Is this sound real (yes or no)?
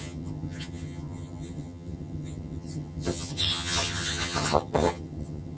no